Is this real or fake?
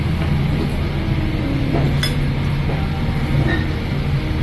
real